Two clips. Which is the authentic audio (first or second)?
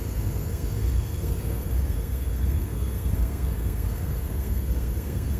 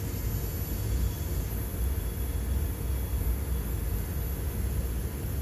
second